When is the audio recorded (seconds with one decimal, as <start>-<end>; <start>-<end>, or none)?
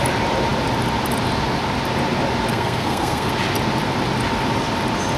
0.0-2.5; 3.3-5.2